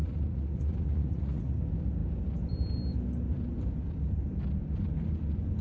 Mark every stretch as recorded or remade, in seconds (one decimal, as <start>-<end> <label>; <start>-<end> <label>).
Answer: 0.0-1.6 remade; 1.6-5.6 recorded